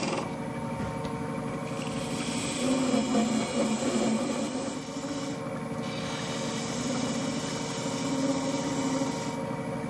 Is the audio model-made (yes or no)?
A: no